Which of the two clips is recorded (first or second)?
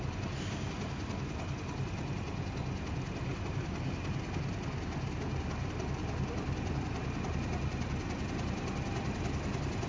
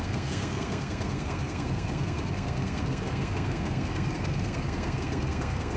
first